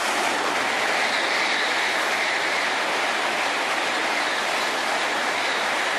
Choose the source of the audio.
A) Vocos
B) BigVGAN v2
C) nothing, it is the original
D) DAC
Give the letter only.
C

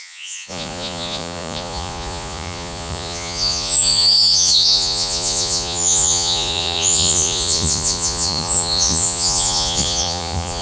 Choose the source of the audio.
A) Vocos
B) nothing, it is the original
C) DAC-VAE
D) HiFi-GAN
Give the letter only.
A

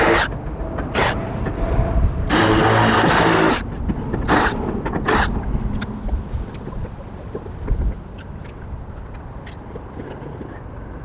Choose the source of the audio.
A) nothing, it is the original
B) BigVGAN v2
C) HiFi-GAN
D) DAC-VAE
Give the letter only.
A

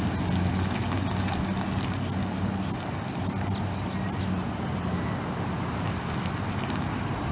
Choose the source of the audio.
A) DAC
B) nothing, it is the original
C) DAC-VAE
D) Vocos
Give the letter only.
B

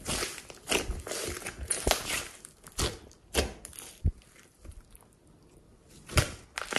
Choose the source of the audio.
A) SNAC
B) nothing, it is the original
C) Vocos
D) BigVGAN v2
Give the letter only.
B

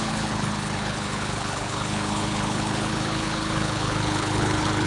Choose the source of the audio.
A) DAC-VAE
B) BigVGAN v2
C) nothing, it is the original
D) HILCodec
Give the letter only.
D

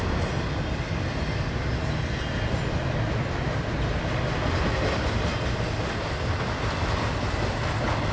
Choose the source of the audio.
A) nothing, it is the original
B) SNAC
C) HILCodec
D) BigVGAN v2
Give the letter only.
A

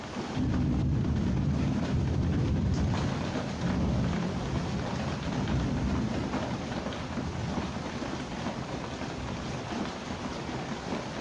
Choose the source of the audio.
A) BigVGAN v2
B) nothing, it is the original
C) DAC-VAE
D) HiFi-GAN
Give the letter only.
A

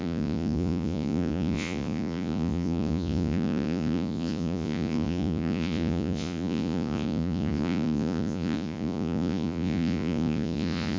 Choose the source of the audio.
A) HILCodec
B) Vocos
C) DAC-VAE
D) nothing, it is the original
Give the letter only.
B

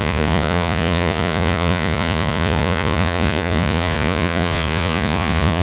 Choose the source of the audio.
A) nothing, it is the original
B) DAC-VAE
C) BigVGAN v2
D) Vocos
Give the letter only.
D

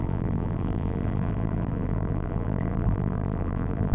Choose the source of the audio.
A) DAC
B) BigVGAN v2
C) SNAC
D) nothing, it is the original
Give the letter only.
B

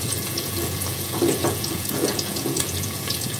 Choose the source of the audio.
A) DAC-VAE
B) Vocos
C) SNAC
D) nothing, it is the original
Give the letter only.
B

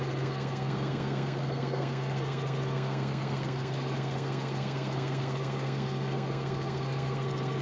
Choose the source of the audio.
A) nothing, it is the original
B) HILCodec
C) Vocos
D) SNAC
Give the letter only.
D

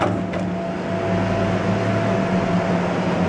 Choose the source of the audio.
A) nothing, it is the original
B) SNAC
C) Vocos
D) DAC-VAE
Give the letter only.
A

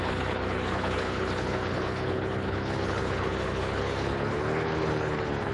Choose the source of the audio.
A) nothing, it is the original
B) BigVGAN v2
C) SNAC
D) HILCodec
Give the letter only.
D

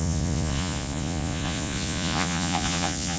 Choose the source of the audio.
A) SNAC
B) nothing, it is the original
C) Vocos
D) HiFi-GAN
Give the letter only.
C